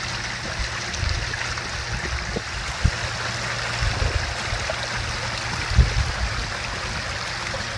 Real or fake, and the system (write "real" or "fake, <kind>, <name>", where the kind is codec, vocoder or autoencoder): real